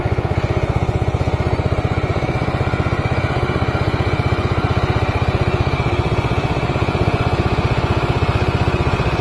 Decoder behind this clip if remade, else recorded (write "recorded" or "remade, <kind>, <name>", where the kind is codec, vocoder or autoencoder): remade, vocoder, Vocos